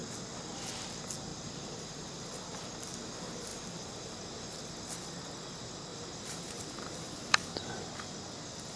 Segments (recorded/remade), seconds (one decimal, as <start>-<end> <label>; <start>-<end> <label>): 0.0-1.3 recorded; 1.3-2.3 remade; 2.3-3.5 recorded; 3.5-4.6 remade; 4.6-5.9 recorded; 5.9-7.9 remade; 7.9-8.8 recorded

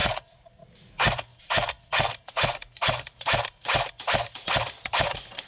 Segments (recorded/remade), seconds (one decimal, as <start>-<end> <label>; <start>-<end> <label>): 0.0-0.5 remade; 0.5-1.3 recorded; 1.3-3.9 remade; 3.9-5.5 recorded

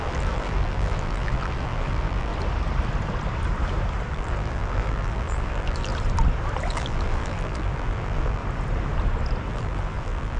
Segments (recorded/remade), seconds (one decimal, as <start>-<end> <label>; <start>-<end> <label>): 0.0-2.3 remade; 2.3-4.1 recorded; 4.1-5.9 remade; 5.9-6.7 recorded; 6.7-8.4 remade; 8.4-9.5 recorded; 9.5-10.4 remade

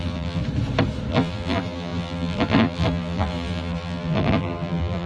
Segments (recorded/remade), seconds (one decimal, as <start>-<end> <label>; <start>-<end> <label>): 0.0-0.4 remade; 0.4-1.1 recorded; 1.1-5.1 remade

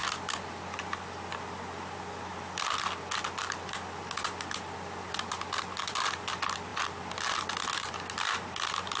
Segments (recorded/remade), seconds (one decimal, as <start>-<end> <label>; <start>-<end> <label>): 0.0-9.0 remade

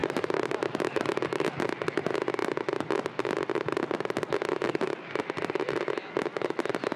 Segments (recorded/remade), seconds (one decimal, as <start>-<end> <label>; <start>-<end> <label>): 0.0-1.6 remade; 1.6-7.0 recorded